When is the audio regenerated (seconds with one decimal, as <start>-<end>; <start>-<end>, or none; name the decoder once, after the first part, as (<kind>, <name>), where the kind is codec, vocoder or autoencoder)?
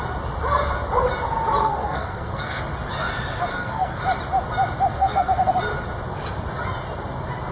1.6-2.6 (codec, SNAC); 3.5-4.0; 4.9-5.5